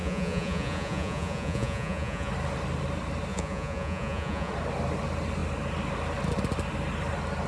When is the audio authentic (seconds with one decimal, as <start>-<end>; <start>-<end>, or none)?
2.3-3.3; 4.5-7.5